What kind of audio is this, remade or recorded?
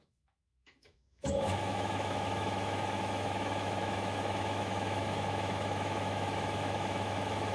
remade